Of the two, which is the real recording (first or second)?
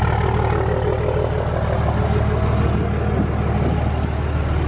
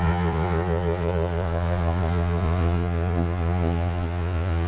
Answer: first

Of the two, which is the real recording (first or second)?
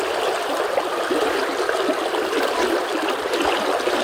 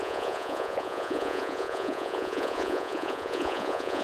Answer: first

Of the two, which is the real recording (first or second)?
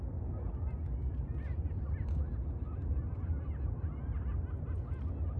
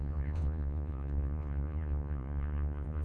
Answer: first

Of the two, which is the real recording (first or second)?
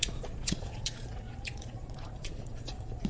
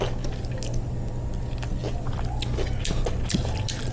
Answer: second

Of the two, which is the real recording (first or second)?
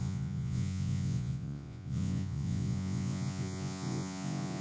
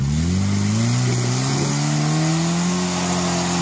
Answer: second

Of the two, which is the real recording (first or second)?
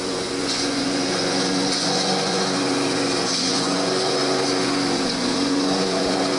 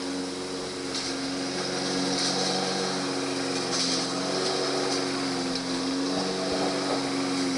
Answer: second